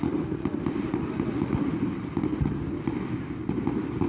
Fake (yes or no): no